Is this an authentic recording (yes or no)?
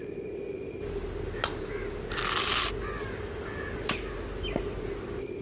yes